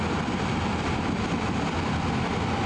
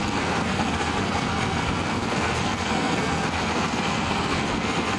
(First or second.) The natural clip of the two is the first